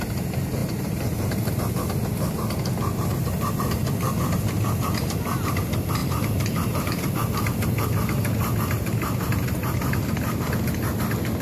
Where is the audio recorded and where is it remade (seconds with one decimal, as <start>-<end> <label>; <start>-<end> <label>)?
0.0-0.6 recorded; 0.6-1.5 remade; 1.5-6.0 recorded; 6.0-7.1 remade; 7.1-11.4 recorded